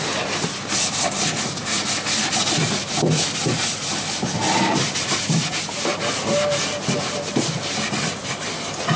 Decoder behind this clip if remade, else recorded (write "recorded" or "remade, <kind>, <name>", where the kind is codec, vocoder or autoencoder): recorded